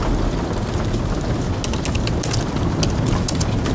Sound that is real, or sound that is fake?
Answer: real